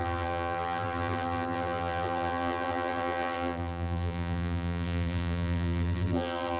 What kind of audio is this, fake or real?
fake